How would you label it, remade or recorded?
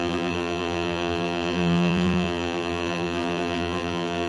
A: remade